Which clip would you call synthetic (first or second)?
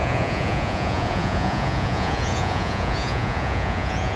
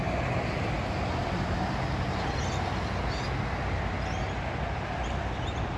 first